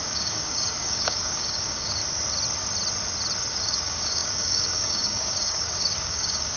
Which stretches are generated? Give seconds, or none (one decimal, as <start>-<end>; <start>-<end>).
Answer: 0.0-2.0; 3.5-6.6